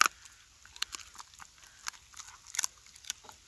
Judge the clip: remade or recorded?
recorded